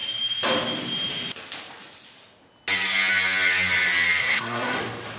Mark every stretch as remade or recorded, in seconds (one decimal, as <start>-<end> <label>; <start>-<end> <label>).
0.0-4.2 recorded; 4.2-4.8 remade; 4.8-5.2 recorded